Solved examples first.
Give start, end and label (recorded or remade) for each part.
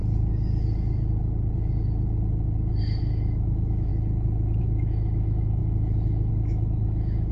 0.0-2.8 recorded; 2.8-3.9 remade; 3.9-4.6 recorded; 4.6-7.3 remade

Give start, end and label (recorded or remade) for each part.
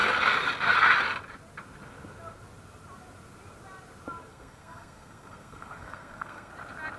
0.0-4.3 recorded; 4.3-6.5 remade; 6.5-7.0 recorded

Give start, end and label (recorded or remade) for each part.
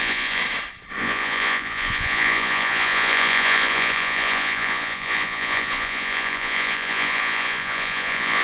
0.0-0.4 remade; 0.4-1.0 recorded; 1.0-8.4 remade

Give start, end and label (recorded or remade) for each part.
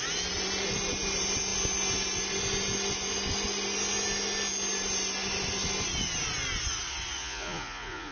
0.0-7.2 recorded; 7.2-8.1 remade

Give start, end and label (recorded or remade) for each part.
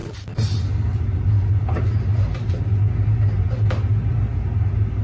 0.0-5.0 recorded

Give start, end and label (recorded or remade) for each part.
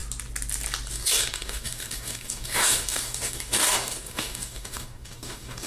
0.0-0.9 recorded; 0.9-5.7 remade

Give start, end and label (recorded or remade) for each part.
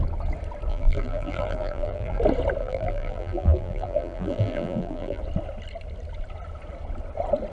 0.0-0.7 recorded; 0.7-2.2 remade; 2.2-2.6 recorded; 2.6-5.2 remade; 5.2-7.5 recorded